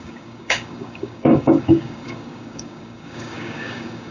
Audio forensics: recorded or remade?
remade